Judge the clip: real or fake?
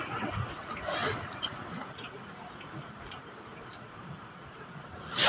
fake